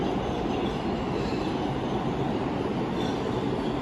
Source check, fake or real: real